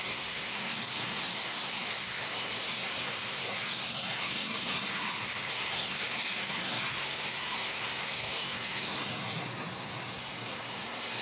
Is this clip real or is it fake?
fake